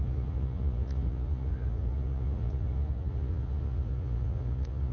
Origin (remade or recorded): remade